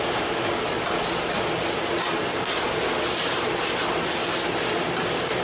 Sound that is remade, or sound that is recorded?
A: recorded